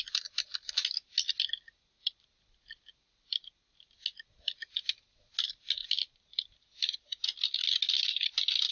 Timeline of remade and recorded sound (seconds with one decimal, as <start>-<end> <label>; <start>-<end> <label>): 0.0-8.7 recorded